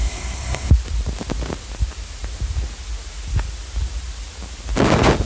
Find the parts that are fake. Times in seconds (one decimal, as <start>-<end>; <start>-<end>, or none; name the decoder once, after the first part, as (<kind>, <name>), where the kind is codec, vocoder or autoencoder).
0.0-0.7 (codec, SNAC)